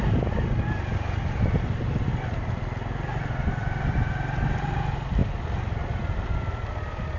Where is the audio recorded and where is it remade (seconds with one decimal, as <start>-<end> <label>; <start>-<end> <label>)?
0.0-7.2 recorded